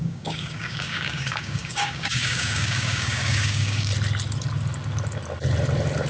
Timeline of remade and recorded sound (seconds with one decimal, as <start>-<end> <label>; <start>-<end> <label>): 0.0-3.9 remade; 3.9-6.1 recorded

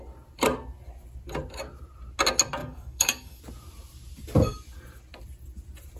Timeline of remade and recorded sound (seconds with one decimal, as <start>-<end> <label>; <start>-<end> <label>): 0.0-2.6 recorded; 2.6-3.4 remade; 3.4-6.0 recorded

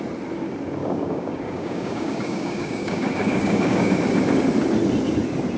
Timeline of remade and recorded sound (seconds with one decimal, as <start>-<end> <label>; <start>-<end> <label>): 0.0-0.8 recorded; 0.8-3.9 remade; 3.9-5.6 recorded

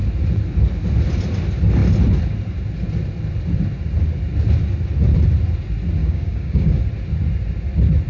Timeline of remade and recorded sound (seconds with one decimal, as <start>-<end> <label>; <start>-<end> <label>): 0.0-6.0 recorded; 6.0-6.8 remade; 6.8-8.1 recorded

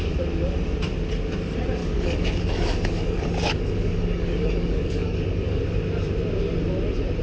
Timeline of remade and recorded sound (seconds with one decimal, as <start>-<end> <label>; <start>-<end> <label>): 0.0-1.8 recorded; 1.8-5.6 remade; 5.6-7.2 recorded